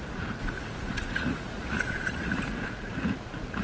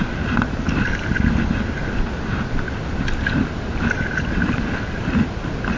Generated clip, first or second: first